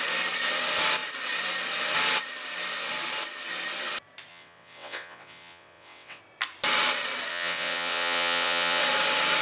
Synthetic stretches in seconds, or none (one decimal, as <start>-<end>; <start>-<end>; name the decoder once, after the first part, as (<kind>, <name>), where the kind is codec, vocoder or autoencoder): 4.3-6.2 (vocoder, WaveNeXt); 7.3-8.8